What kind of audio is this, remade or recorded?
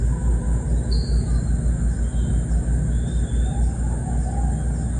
recorded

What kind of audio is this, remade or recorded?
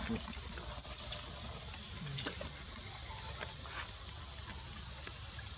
remade